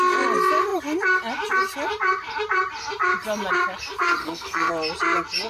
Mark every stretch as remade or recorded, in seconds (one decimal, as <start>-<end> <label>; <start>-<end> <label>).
0.0-4.2 recorded; 4.2-4.7 remade; 4.7-5.5 recorded

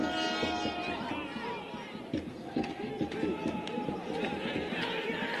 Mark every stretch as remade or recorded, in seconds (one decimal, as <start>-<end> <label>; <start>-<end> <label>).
0.0-2.3 recorded; 2.3-2.9 remade; 2.9-5.4 recorded

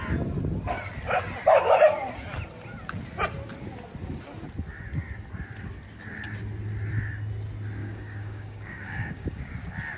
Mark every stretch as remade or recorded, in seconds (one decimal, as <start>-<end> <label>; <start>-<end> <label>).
0.0-7.8 recorded; 7.8-9.4 remade; 9.4-10.0 recorded

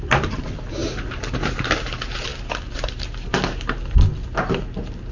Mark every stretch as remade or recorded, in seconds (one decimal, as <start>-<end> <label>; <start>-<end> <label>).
0.0-5.1 recorded

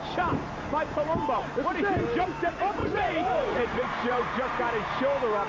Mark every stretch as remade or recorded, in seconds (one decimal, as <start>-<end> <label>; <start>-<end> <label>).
0.0-2.8 recorded; 2.8-4.6 remade; 4.6-5.5 recorded